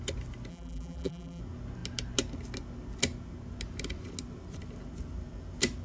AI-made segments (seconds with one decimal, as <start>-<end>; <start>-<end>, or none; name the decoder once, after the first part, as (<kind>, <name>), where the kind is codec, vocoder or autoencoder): 0.5-1.4 (vocoder, BigVGAN v2)